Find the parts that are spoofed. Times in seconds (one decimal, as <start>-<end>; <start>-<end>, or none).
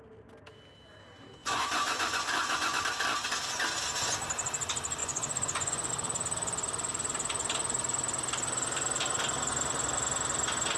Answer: 1.4-2.8; 5.0-5.9